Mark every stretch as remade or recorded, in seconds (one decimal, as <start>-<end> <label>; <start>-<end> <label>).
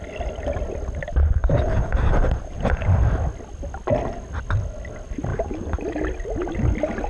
0.0-1.4 recorded; 1.4-3.0 remade; 3.0-5.3 recorded; 5.3-5.8 remade; 5.8-7.1 recorded